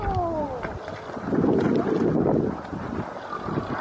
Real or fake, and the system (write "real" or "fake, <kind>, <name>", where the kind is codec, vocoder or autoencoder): real